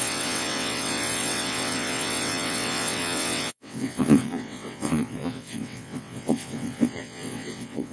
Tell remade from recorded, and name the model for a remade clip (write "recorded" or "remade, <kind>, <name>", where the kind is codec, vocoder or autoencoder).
remade, vocoder, WaveNeXt